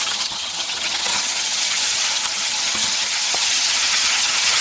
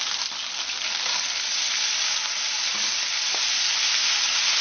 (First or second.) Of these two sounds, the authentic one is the second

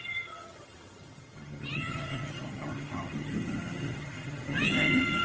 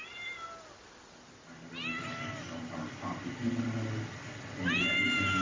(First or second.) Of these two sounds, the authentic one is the second